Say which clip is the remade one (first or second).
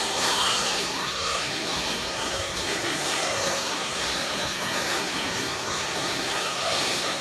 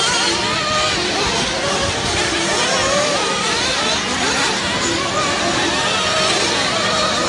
first